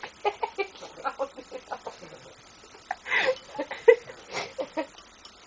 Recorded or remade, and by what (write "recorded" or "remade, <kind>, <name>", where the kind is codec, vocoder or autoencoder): recorded